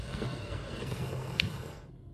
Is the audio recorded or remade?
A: remade